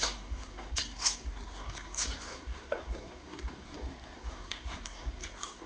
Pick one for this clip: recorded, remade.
remade